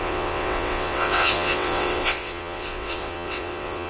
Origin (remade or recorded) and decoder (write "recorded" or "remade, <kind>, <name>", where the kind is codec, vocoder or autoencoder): remade, vocoder, WaveNeXt